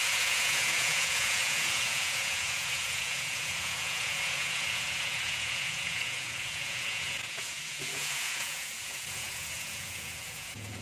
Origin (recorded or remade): remade